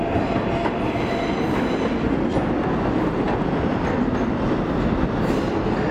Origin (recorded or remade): recorded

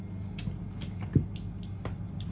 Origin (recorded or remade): recorded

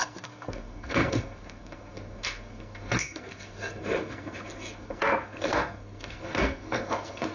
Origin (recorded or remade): remade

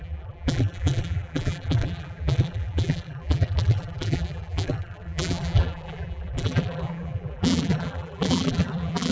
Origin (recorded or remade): remade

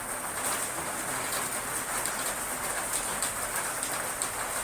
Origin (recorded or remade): recorded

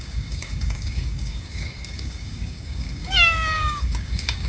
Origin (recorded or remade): remade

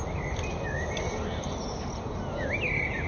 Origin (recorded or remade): recorded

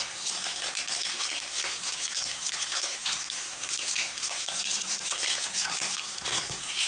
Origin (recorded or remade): remade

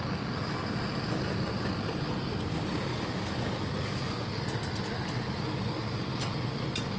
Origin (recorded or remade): recorded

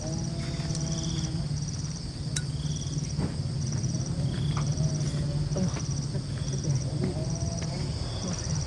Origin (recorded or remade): recorded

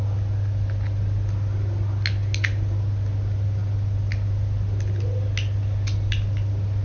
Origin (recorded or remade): recorded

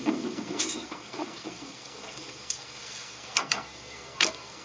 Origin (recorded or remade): remade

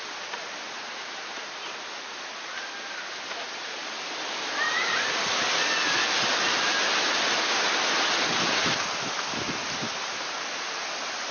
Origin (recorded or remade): recorded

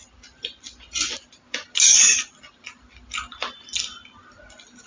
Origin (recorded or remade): recorded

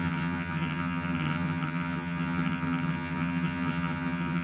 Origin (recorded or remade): remade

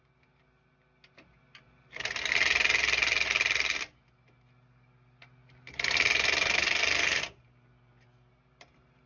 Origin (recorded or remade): recorded